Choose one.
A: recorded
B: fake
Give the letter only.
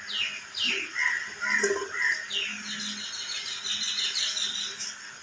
A